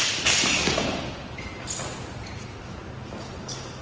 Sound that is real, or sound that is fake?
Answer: real